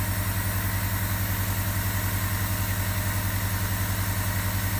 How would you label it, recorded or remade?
recorded